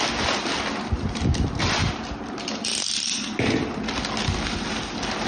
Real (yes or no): yes